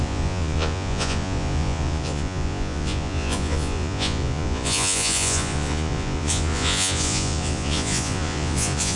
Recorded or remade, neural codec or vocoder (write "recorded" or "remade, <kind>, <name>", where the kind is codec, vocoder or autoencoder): remade, vocoder, Vocos